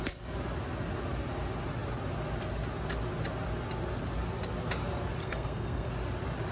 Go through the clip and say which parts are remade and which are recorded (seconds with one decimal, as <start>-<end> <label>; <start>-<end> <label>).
0.0-5.2 recorded; 5.2-5.9 remade; 5.9-6.5 recorded